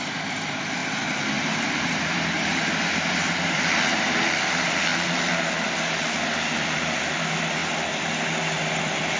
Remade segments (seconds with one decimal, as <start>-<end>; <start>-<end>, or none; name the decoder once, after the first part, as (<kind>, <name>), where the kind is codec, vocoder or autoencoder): 0.0-0.8 (vocoder, BigVGAN v2); 1.5-4.9; 6.5-7.6; 8.5-9.2